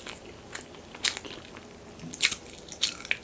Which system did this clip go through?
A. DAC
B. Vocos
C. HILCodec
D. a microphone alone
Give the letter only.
D